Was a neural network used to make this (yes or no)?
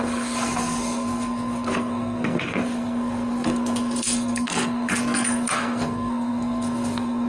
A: yes